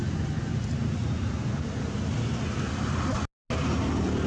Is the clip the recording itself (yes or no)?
yes